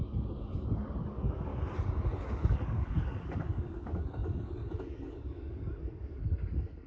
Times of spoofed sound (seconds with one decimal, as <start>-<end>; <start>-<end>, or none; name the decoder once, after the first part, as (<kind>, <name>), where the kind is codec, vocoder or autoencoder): 0.0-1.5 (codec, DAC); 2.3-6.9